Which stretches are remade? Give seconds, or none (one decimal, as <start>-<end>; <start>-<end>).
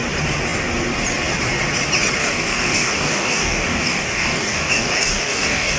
2.2-5.8